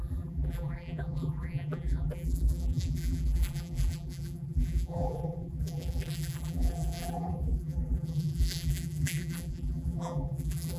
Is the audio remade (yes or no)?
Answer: yes